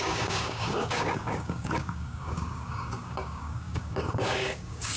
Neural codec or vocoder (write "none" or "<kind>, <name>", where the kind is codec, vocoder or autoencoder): codec, DAC